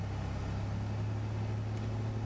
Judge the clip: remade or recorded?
recorded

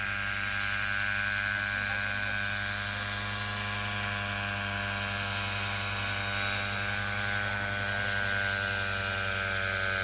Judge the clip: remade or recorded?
recorded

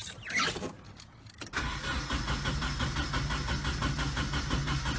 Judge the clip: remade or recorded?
recorded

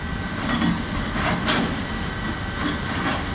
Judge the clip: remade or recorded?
recorded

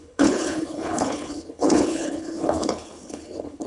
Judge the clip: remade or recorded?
remade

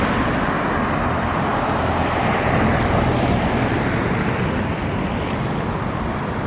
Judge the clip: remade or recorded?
remade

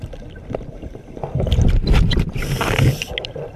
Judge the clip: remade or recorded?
recorded